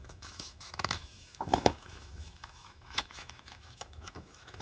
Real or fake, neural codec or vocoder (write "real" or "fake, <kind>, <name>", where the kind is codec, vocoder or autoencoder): fake, autoencoder, DAC-VAE